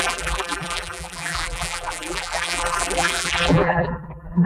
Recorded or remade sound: remade